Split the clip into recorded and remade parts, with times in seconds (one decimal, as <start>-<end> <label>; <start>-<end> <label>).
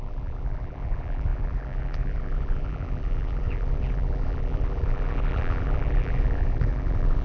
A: 0.0-7.2 remade